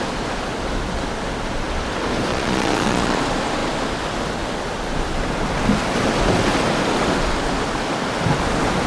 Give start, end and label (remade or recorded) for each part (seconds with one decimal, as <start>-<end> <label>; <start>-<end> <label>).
0.0-2.3 recorded; 2.3-3.2 remade; 3.2-8.9 recorded